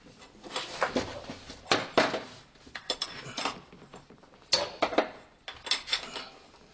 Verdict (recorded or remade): recorded